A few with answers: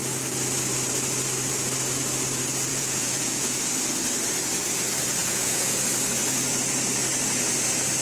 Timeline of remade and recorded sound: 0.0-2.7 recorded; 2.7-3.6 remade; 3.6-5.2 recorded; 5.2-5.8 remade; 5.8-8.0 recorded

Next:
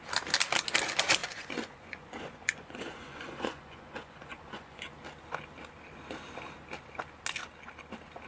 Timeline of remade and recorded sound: 0.0-1.2 recorded; 1.2-4.8 remade; 4.8-8.3 recorded

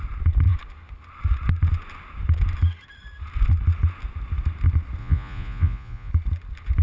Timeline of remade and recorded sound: 0.0-5.0 recorded; 5.0-6.1 remade; 6.1-6.8 recorded